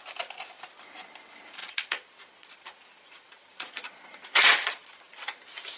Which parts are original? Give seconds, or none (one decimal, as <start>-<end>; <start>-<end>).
0.0-1.6; 5.1-5.8

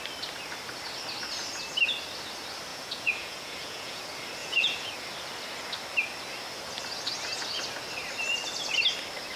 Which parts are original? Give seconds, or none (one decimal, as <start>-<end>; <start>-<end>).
0.0-2.7; 4.0-4.4; 4.9-9.4

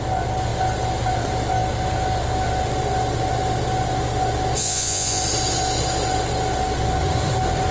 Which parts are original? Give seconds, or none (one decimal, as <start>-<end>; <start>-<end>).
0.0-4.6; 5.2-7.7